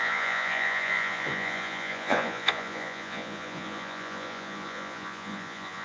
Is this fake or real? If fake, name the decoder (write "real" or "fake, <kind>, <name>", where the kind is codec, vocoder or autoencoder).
fake, vocoder, Vocos